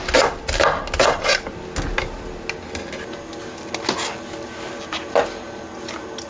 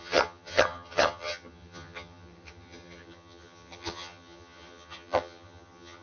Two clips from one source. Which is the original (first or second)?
first